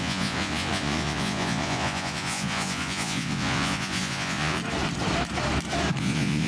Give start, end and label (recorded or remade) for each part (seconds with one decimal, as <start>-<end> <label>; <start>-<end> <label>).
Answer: 0.0-4.6 remade; 4.6-6.0 recorded; 6.0-6.5 remade